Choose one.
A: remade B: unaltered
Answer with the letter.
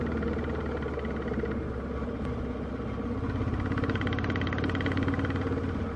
B